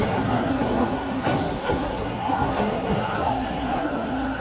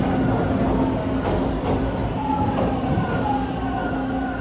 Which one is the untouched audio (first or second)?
second